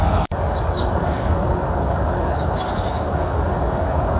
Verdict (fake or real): fake